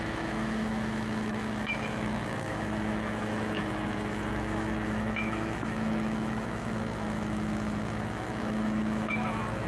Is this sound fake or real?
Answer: fake